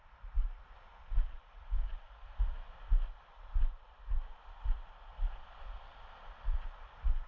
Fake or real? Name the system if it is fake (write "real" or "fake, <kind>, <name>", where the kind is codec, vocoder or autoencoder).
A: real